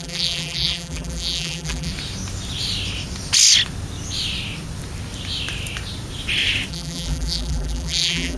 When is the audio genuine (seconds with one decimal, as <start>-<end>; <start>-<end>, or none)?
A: 1.9-6.7